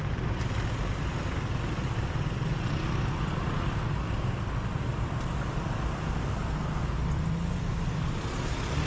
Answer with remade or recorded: recorded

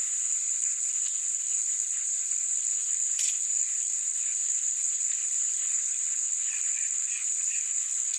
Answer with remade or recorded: remade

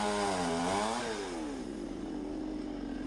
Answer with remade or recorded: recorded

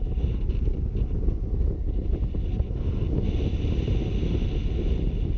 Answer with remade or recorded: recorded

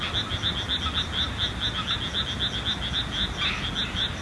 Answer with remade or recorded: recorded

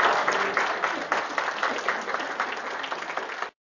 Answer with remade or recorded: recorded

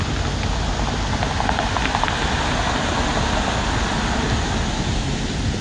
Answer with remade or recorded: recorded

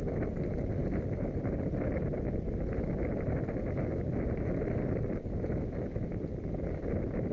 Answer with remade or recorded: recorded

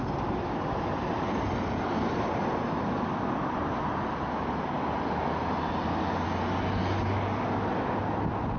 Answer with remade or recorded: recorded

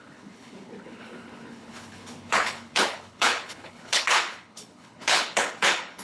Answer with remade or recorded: remade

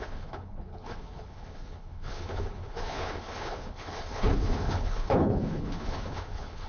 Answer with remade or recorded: remade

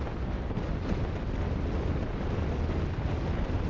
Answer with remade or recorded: recorded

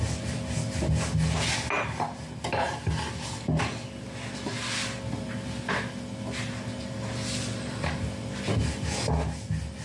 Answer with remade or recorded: recorded